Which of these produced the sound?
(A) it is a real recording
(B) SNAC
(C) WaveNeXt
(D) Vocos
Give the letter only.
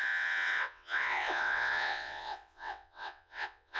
C